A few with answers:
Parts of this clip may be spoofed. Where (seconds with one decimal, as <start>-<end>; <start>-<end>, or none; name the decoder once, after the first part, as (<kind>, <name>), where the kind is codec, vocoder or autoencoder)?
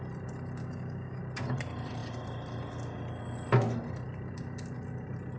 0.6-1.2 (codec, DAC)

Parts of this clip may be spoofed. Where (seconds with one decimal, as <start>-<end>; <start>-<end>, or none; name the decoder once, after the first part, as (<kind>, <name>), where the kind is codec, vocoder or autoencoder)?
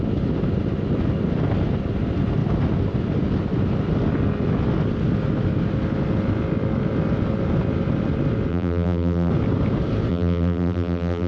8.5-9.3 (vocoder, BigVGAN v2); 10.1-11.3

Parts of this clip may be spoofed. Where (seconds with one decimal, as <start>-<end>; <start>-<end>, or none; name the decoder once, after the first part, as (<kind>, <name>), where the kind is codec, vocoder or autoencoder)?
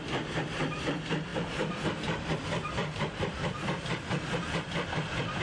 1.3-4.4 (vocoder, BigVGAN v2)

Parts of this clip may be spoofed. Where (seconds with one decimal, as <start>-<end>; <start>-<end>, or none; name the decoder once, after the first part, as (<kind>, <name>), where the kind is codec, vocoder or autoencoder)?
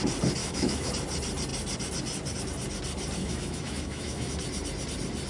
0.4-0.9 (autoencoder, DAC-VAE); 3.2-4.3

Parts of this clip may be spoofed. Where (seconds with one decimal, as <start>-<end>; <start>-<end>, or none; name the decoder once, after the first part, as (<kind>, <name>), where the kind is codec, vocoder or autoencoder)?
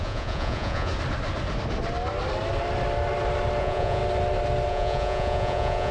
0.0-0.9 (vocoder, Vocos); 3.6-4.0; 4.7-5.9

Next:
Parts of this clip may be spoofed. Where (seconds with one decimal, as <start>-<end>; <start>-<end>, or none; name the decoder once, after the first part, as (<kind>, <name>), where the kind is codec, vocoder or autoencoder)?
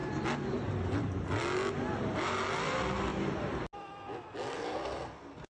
4.5-5.5 (codec, SNAC)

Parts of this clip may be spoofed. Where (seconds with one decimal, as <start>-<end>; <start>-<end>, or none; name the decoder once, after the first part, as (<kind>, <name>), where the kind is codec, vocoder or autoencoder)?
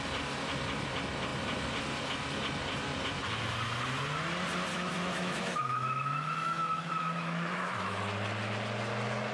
4.7-8.0 (autoencoder, DAC-VAE)